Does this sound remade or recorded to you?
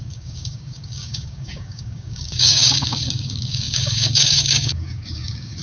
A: remade